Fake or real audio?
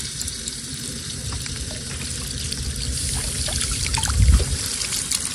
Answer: real